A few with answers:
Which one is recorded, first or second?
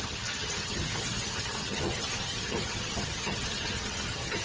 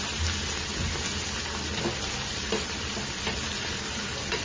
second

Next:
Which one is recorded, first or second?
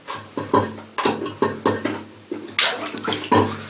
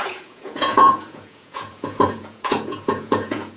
first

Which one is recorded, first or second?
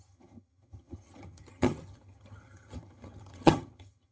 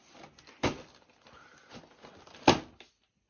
second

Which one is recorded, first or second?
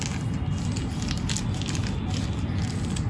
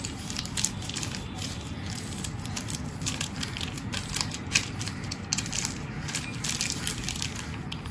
first